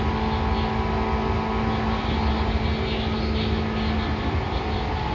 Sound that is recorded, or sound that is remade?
recorded